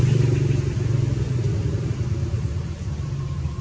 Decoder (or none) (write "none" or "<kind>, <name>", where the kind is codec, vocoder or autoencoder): none